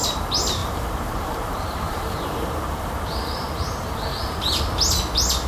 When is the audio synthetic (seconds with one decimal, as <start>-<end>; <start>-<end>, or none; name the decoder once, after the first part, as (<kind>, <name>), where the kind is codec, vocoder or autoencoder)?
0.6-2.9 (vocoder, BigVGAN v2)

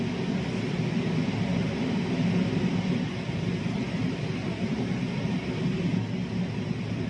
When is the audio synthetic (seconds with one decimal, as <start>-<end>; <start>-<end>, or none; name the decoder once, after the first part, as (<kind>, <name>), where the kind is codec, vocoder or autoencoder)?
none